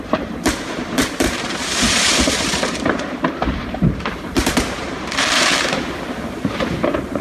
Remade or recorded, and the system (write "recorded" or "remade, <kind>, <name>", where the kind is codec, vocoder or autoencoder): remade, vocoder, BigVGAN v2